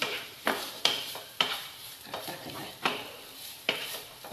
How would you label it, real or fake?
fake